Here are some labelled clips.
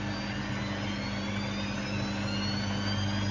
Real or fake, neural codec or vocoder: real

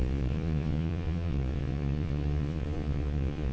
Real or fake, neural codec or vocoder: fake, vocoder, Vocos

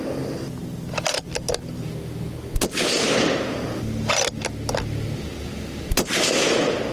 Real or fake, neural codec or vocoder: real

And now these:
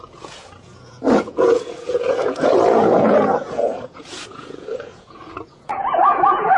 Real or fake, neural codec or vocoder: fake, vocoder, Vocos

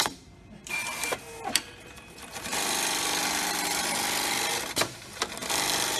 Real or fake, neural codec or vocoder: real